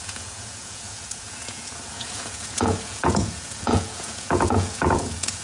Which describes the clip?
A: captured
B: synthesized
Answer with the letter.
B